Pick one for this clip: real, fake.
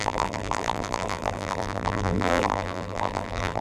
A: fake